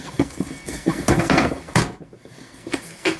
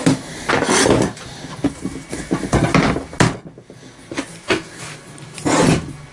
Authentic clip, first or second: second